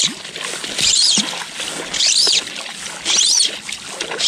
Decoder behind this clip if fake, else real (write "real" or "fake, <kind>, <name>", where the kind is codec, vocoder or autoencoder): real